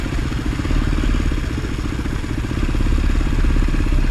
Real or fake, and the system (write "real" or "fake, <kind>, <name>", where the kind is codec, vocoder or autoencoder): real